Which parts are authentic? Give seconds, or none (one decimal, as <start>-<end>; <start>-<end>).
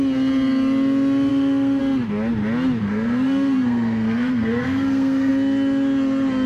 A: 0.0-1.3; 1.8-2.8; 5.3-6.5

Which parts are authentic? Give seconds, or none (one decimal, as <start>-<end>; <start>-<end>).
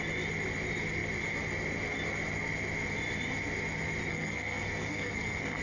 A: 0.0-4.1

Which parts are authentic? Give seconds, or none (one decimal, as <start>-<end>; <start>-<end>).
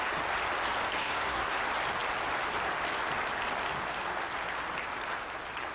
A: 0.0-1.0; 1.6-5.7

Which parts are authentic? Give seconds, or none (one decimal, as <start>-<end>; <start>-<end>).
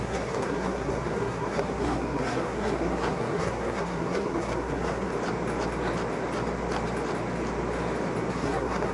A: 5.1-8.3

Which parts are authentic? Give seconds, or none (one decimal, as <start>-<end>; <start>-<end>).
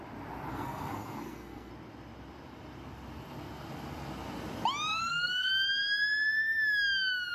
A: 0.0-0.5; 1.7-4.9; 5.5-7.3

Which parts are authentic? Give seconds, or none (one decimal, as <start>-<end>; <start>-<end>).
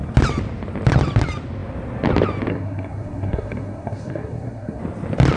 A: 0.0-2.5; 4.8-5.4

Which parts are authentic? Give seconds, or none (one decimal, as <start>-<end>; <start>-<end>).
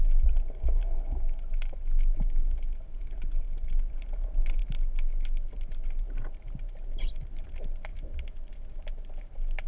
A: 0.0-9.7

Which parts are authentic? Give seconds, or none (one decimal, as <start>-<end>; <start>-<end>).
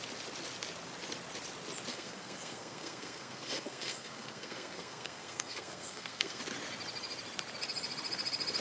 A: 0.0-1.9; 6.4-8.6